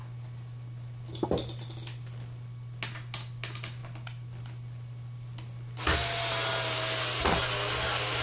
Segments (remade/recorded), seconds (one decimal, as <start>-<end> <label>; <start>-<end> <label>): 0.0-8.2 recorded